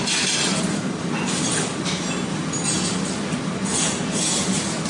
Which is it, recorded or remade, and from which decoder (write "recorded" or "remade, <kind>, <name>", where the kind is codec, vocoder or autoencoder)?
recorded